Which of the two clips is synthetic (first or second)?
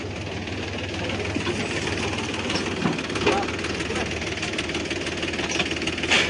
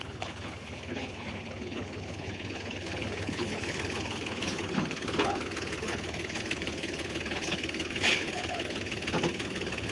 second